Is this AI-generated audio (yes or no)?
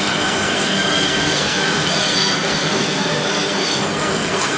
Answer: yes